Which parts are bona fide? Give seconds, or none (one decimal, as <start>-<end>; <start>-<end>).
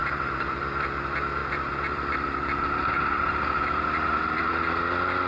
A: 0.6-1.4; 4.6-5.3